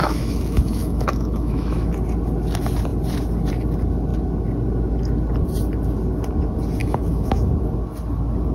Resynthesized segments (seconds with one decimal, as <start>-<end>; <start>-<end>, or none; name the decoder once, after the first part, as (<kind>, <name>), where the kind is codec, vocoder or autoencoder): 0.0-1.9 (autoencoder, DAC-VAE); 6.8-7.5